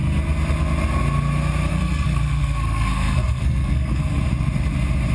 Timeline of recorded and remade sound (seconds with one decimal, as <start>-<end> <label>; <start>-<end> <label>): 0.0-1.7 recorded; 1.7-4.2 remade; 4.2-5.1 recorded